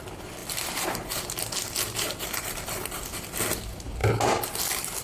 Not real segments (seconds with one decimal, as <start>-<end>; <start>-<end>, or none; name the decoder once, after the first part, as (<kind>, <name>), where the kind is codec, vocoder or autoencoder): 0.4-1.1 (vocoder, BigVGAN v2)